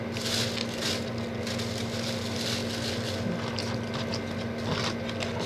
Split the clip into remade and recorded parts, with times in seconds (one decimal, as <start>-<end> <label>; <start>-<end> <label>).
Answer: 0.0-5.5 recorded